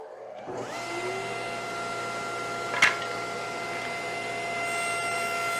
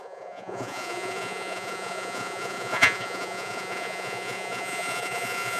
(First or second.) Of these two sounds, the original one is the first